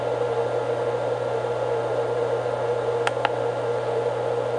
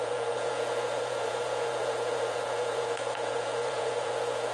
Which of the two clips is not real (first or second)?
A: second